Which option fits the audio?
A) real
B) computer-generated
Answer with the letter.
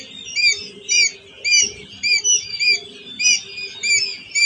A